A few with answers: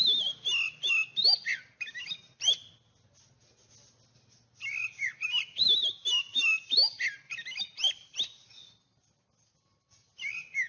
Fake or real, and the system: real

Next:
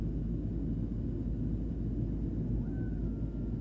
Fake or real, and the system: real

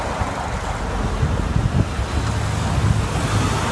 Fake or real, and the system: real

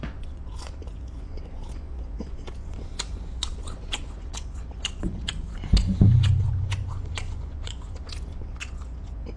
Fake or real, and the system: fake, vocoder, Vocos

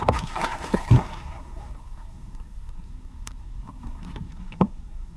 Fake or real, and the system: fake, codec, SNAC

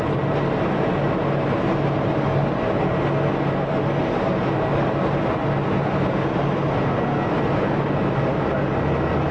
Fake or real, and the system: real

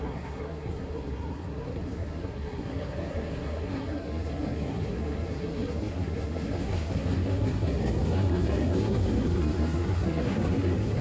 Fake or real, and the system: fake, codec, SNAC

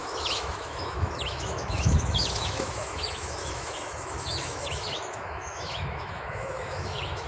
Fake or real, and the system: fake, autoencoder, DAC-VAE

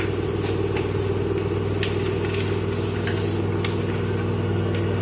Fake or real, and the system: real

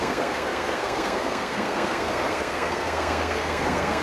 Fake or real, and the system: fake, codec, SNAC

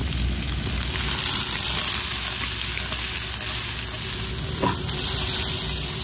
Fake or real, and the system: real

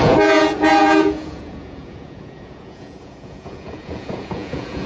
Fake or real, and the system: fake, vocoder, Vocos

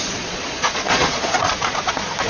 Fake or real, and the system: fake, vocoder, Vocos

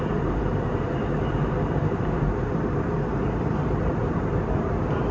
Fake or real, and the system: fake, vocoder, BigVGAN v2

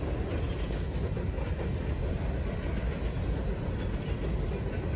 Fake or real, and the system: real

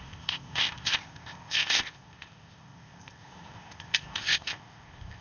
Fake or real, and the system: fake, codec, ZipCodec